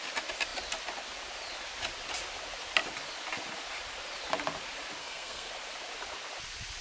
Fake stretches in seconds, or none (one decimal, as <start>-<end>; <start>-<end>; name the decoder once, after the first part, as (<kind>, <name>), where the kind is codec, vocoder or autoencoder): 5.0-5.5 (codec, SNAC)